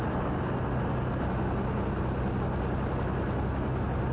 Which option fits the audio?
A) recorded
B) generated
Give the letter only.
A